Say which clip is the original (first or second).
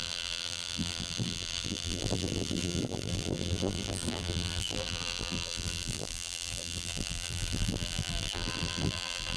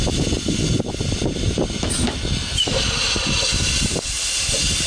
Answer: second